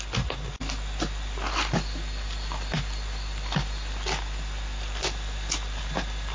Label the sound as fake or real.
real